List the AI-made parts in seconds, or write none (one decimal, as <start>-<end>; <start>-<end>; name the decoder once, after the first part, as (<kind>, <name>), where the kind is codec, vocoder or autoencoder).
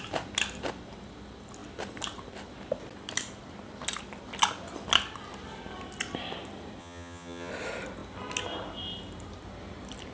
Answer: 6.8-7.5 (vocoder, HiFi-GAN)